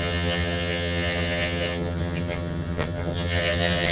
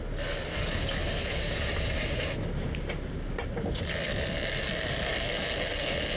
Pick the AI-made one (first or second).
first